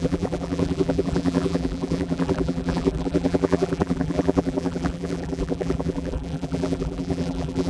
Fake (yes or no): yes